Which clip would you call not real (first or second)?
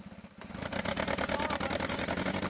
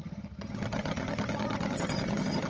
second